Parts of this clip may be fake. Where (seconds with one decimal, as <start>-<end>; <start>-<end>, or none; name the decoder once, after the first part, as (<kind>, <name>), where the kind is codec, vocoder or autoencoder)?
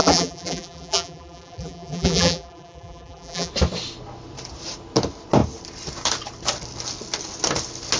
0.0-3.5 (vocoder, BigVGAN v2)